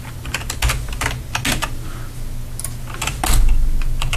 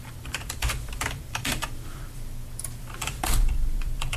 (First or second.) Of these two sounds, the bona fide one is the first